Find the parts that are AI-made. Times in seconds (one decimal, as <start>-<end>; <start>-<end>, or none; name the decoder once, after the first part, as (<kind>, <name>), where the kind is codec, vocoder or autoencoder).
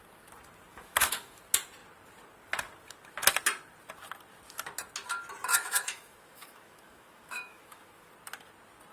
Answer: 0.7-1.4 (autoencoder, DAC-VAE); 5.5-8.1